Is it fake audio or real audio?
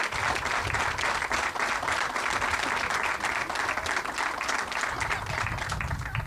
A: real